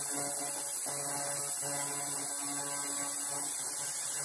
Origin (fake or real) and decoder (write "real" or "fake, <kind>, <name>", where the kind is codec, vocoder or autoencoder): real